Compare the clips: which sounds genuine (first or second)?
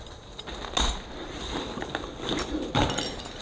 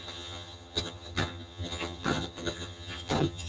first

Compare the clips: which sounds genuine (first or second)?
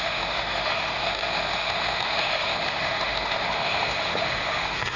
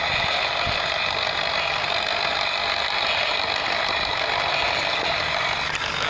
second